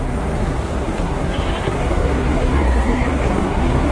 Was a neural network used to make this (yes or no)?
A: yes